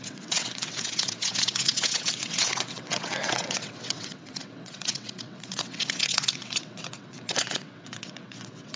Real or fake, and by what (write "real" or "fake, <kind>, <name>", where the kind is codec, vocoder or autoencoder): fake, vocoder, WaveNeXt